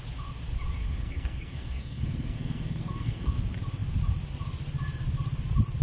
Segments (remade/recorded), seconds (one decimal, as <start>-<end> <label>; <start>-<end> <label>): 0.0-0.8 recorded; 0.8-3.4 remade; 3.4-5.8 recorded